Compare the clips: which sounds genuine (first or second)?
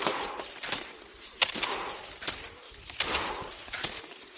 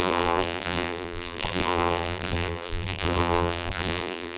first